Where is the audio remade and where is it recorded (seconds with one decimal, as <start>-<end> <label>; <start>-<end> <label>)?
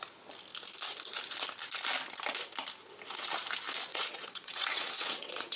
0.0-3.9 recorded; 3.9-5.6 remade